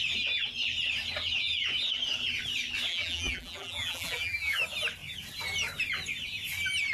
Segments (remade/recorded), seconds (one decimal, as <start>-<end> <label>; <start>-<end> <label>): 0.0-2.9 recorded; 2.9-4.6 remade; 4.6-6.9 recorded